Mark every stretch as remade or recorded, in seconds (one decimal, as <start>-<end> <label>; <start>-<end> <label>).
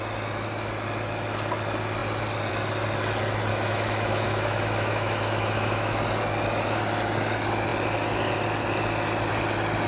0.0-3.5 recorded; 3.5-6.0 remade; 6.0-9.9 recorded